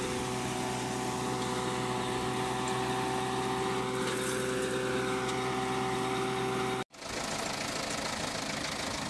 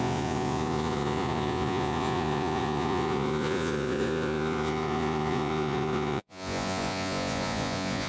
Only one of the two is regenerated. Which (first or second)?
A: second